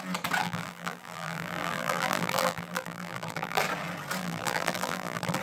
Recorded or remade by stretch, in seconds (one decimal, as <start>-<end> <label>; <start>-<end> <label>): 0.0-0.4 recorded; 0.4-3.6 remade; 3.6-4.2 recorded; 4.2-5.4 remade

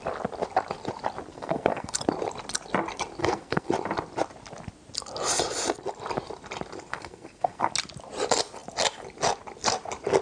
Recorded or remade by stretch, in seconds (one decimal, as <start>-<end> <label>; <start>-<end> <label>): 0.0-1.3 recorded; 1.3-2.0 remade; 2.0-3.2 recorded; 3.2-3.7 remade; 3.7-6.9 recorded; 6.9-7.7 remade; 7.7-10.2 recorded

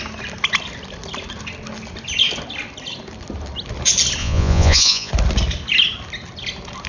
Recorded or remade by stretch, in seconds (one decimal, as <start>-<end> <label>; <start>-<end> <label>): 0.0-4.2 recorded; 4.2-5.1 remade; 5.1-6.9 recorded